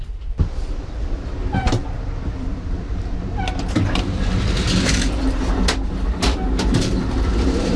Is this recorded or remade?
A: remade